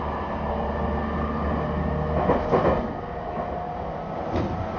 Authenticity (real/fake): real